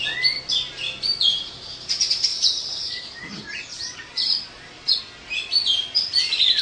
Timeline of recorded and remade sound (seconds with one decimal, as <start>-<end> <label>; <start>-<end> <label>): 0.0-2.3 recorded; 2.3-3.1 remade; 3.1-3.7 recorded; 3.7-5.0 remade; 5.0-6.6 recorded